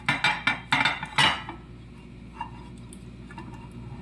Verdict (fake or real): real